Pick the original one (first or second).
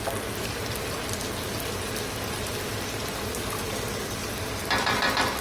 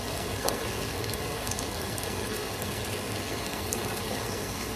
first